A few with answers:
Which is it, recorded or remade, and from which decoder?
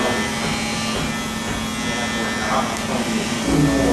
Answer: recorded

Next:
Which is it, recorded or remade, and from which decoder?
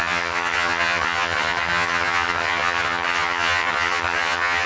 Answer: remade, vocoder, HiFi-GAN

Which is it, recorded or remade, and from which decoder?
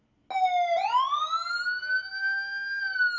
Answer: recorded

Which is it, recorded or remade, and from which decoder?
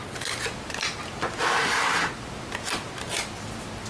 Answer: recorded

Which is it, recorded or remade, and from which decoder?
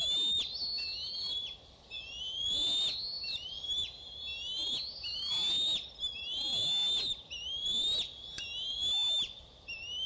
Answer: recorded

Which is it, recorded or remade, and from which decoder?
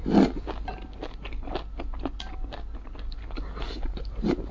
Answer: recorded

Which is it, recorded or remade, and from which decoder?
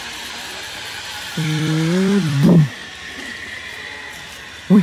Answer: remade, vocoder, BigVGAN v2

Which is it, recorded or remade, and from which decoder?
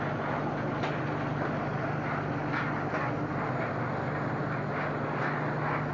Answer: recorded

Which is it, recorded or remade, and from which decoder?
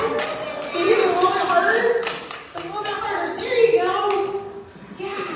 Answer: recorded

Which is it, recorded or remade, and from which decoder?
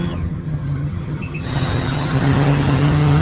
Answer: remade, vocoder, HiFi-GAN